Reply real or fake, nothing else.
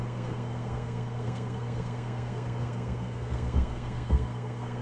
fake